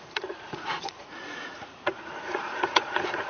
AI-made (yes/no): yes